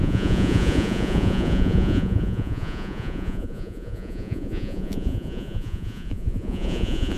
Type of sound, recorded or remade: remade